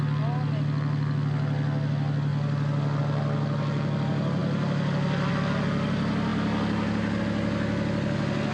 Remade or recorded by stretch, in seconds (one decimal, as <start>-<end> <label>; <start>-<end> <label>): 0.0-8.5 recorded